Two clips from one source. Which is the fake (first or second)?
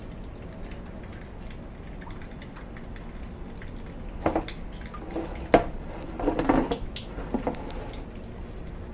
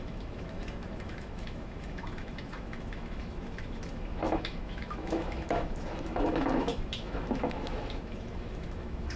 second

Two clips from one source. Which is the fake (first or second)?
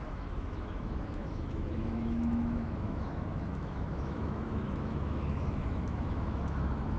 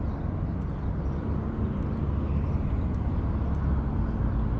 first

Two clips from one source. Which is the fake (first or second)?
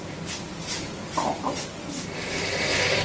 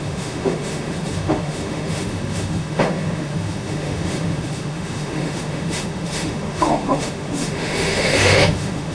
second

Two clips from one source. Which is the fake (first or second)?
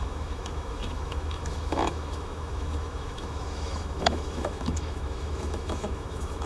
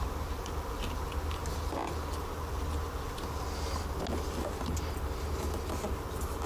first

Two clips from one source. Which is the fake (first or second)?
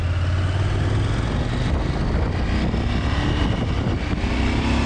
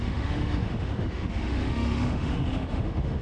second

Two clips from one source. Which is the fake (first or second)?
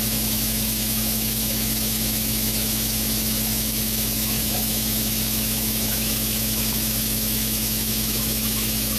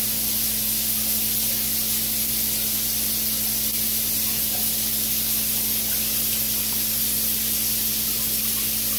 first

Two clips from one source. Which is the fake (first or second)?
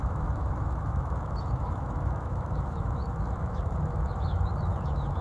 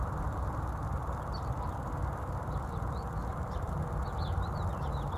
first